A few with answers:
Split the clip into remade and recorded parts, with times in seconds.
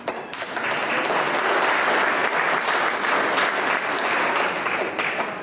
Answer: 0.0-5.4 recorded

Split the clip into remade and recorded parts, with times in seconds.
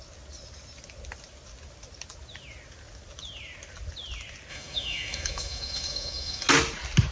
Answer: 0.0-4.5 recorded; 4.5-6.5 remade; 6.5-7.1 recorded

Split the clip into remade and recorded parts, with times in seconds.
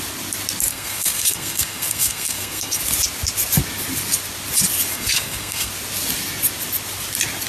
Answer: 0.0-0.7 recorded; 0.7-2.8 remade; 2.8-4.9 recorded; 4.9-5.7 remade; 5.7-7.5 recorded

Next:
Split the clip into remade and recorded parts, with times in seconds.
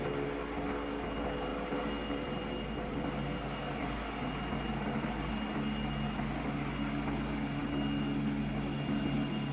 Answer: 0.0-9.5 recorded